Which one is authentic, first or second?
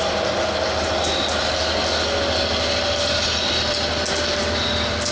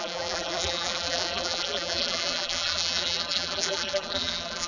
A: first